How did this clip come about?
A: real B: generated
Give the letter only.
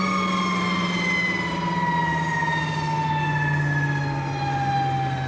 A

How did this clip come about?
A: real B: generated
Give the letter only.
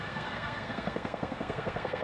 B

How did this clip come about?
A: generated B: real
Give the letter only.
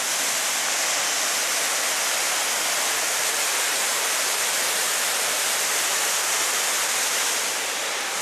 B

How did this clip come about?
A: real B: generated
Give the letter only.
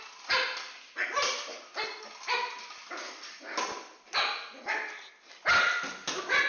A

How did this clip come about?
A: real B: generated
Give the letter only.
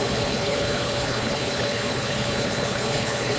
B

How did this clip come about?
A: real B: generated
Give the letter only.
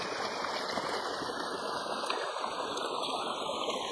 A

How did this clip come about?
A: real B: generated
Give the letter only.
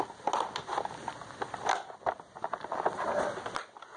A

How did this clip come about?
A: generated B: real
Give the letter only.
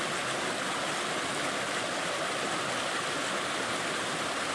B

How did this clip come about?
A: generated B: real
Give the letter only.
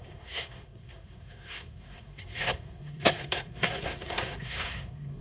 A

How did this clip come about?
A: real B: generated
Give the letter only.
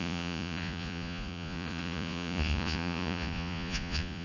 B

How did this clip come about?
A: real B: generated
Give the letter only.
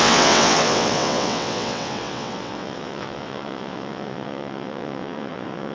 B